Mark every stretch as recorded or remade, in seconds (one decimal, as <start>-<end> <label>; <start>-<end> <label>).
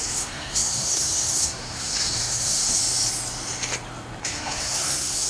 0.0-2.8 remade; 2.8-4.2 recorded; 4.2-5.3 remade